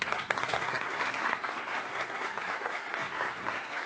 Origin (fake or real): fake